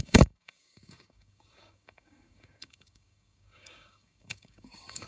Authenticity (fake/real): fake